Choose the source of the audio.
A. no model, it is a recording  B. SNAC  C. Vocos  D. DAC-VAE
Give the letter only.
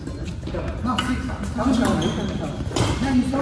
A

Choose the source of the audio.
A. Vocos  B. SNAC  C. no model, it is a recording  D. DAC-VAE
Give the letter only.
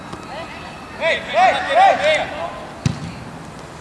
C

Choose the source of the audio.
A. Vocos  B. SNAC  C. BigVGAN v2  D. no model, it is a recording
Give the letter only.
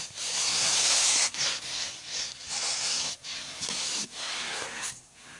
B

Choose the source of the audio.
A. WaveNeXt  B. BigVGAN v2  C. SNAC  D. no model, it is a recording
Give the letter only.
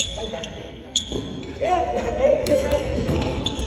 C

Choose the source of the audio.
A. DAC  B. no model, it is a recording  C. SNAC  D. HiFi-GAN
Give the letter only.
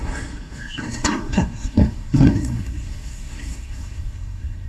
C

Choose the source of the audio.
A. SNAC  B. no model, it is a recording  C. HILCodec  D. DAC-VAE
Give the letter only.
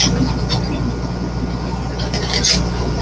B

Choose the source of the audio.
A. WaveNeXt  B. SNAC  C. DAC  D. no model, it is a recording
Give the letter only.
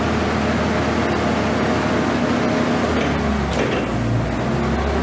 D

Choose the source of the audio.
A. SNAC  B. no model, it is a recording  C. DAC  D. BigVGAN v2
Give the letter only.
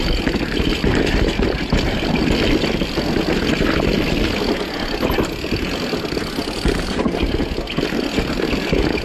B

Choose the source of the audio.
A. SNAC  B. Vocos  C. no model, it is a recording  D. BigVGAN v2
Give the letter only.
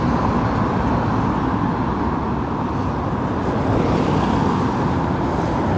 C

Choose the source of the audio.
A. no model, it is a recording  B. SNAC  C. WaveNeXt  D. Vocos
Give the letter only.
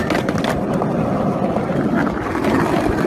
A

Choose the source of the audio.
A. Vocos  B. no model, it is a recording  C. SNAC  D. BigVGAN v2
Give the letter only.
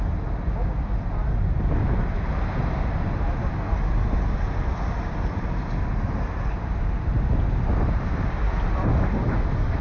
B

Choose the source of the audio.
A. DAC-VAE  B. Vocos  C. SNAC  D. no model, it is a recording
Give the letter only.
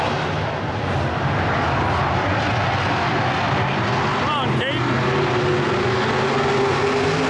D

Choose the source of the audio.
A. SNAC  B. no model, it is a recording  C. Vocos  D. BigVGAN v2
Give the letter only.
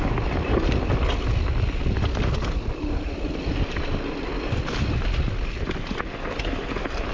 B